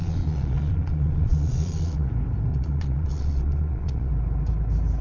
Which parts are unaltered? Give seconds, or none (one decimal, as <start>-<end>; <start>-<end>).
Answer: 2.1-2.5; 4.1-5.0